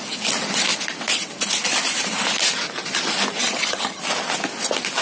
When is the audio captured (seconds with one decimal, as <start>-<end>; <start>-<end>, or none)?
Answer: 0.0-3.4; 4.0-5.0